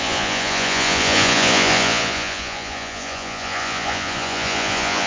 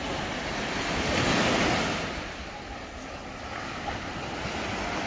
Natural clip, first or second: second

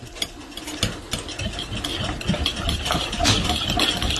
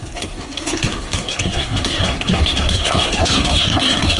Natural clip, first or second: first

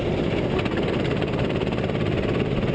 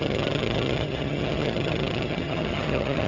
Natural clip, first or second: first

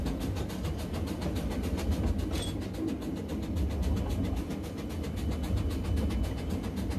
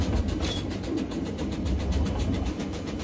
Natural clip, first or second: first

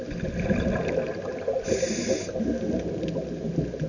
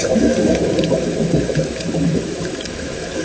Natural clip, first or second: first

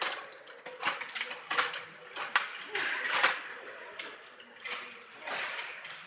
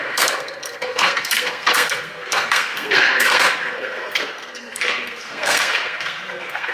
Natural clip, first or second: first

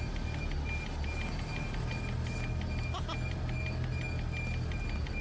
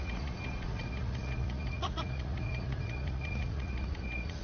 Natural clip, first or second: first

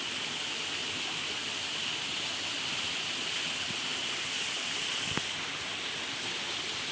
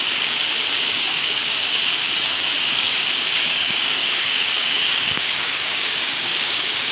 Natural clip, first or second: first